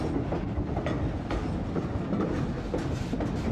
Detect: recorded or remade recorded